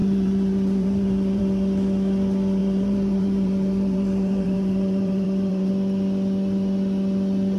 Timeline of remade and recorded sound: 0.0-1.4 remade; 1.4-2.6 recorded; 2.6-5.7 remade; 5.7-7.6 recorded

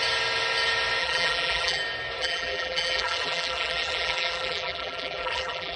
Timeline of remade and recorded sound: 0.0-1.0 recorded; 1.0-1.8 remade; 1.8-2.2 recorded; 2.2-5.8 remade

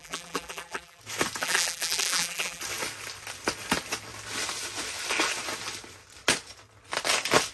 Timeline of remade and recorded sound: 0.0-1.0 remade; 1.0-1.4 recorded; 1.4-2.6 remade; 2.6-7.5 recorded

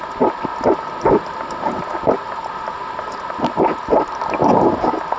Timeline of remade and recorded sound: 0.0-5.2 recorded

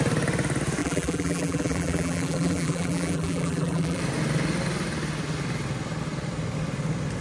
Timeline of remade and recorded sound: 0.0-0.8 recorded; 0.8-4.0 remade; 4.0-7.2 recorded

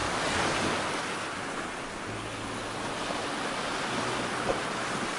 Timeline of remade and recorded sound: 0.0-3.2 recorded; 3.2-4.6 remade; 4.6-5.2 recorded